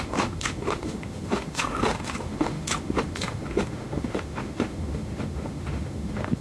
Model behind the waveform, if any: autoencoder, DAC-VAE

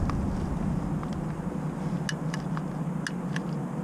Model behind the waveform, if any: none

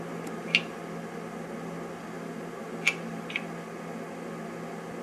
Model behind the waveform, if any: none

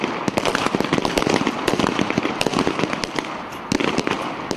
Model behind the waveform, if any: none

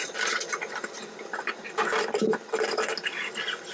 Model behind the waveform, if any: none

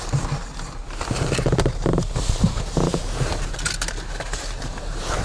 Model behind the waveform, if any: none